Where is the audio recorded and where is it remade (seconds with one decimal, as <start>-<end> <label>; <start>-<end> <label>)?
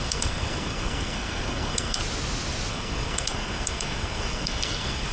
0.0-2.0 remade; 2.0-2.7 recorded; 2.7-5.1 remade